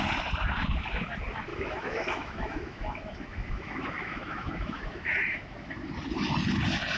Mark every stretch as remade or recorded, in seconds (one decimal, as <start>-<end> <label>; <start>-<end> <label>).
0.0-1.5 recorded; 1.5-5.7 remade; 5.7-7.0 recorded

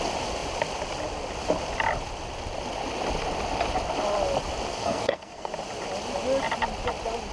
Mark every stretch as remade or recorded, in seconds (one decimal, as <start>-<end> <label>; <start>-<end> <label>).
0.0-4.7 recorded; 4.7-5.5 remade; 5.5-7.3 recorded

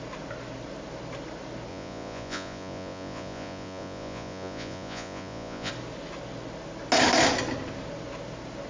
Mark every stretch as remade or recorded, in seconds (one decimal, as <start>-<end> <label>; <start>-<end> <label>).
0.0-1.7 recorded; 1.7-5.7 remade; 5.7-8.7 recorded